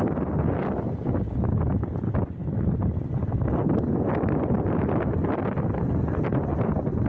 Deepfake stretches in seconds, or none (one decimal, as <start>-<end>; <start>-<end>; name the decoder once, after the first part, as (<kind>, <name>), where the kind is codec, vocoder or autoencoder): none